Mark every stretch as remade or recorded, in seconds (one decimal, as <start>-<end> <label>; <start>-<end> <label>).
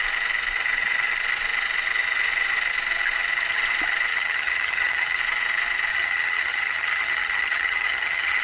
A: 0.0-4.1 recorded; 4.1-5.2 remade; 5.2-5.9 recorded; 5.9-8.4 remade